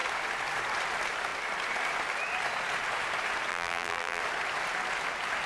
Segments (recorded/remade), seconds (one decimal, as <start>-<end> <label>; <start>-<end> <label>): 0.0-3.5 recorded; 3.5-4.2 remade; 4.2-5.5 recorded